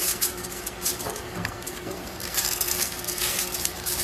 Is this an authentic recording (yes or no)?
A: no